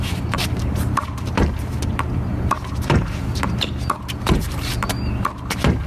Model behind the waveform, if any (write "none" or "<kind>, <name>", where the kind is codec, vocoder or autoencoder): vocoder, BigVGAN v2